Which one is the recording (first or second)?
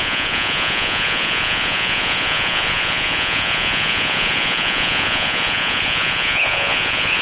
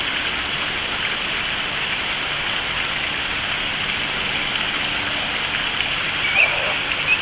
second